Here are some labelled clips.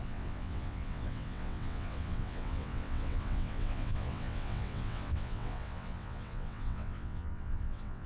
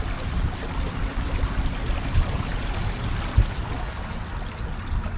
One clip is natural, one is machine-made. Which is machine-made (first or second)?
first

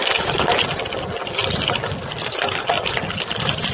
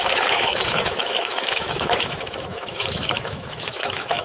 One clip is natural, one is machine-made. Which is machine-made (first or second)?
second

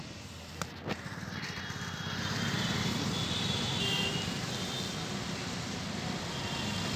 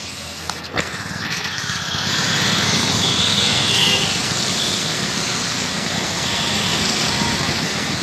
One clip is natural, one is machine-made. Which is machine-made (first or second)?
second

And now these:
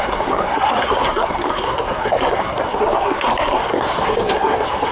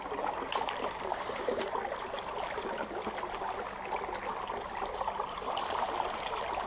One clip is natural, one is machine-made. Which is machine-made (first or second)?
first